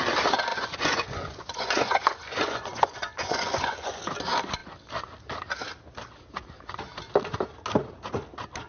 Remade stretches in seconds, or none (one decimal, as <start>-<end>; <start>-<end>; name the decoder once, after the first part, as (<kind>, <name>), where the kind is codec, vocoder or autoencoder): 0.5-4.1 (vocoder, Vocos)